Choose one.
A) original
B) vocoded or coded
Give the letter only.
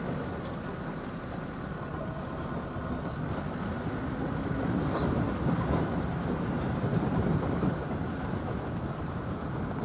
A